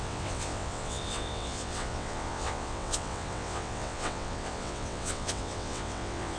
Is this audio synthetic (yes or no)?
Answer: yes